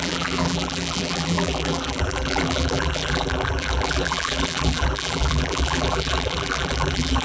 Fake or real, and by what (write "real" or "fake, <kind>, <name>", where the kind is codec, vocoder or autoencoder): fake, vocoder, BigVGAN v2